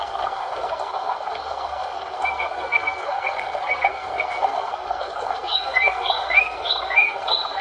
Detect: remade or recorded remade